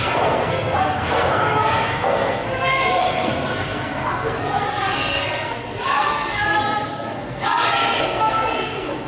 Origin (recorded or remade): remade